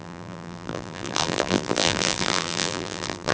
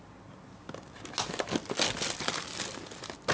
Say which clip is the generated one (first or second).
first